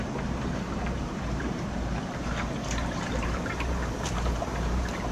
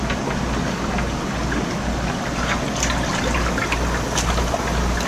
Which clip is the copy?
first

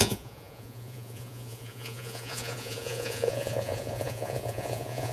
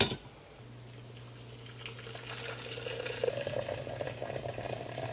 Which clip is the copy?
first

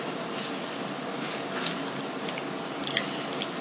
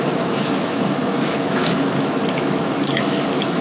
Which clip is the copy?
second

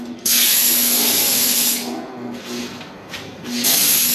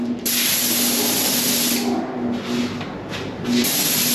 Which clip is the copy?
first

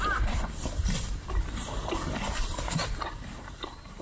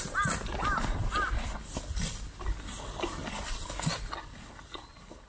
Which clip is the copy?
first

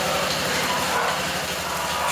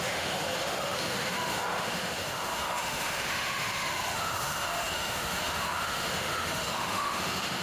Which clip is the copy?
second